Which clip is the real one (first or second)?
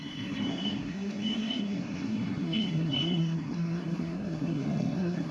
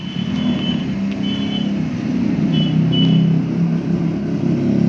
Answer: second